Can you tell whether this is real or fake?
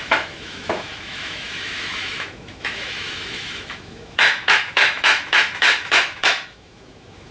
fake